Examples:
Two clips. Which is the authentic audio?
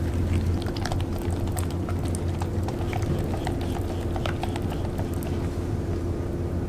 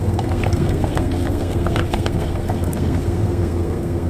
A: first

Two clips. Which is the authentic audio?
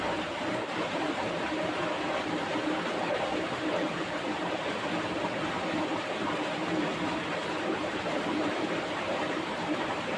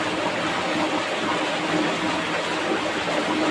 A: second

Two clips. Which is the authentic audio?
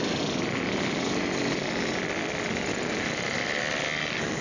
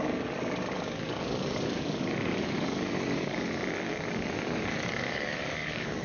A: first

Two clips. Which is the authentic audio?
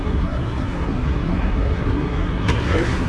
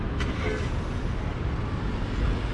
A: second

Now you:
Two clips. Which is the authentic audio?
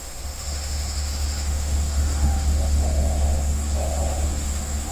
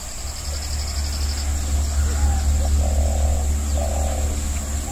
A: second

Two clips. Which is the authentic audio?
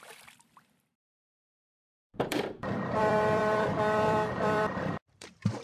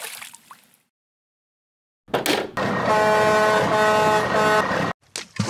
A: second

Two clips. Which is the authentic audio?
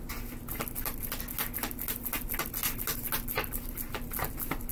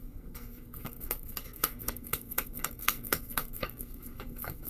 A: first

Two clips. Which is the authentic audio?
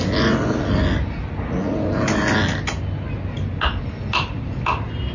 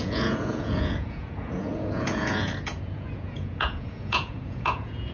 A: first